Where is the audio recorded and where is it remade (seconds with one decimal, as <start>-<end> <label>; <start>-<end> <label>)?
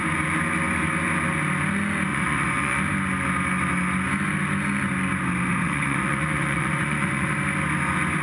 0.0-2.1 recorded; 2.1-2.8 remade; 2.8-5.5 recorded; 5.5-7.4 remade; 7.4-8.2 recorded